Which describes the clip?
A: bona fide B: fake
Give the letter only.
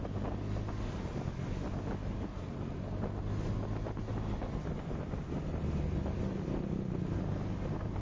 A